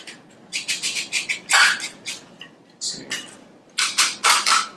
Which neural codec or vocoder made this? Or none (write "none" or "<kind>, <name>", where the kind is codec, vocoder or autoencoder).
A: none